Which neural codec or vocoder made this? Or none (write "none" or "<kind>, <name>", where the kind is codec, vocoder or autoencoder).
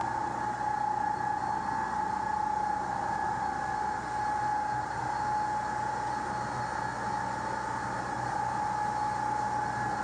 none